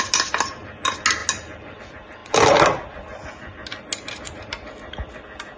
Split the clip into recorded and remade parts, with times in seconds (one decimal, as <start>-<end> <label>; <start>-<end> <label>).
0.0-5.6 recorded